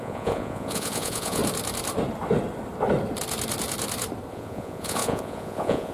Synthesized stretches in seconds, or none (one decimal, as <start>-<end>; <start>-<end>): 0.0-1.4; 4.3-5.9